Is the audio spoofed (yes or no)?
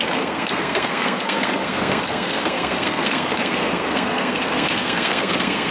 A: yes